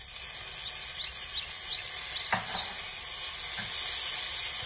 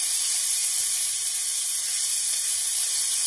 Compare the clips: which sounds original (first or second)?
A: first